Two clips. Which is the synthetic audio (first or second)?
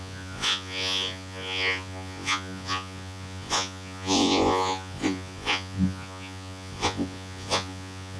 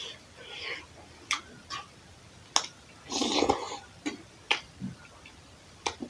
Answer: first